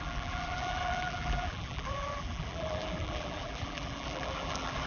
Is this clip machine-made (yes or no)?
yes